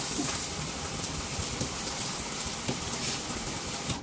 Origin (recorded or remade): remade